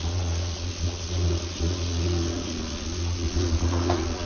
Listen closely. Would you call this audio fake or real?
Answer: fake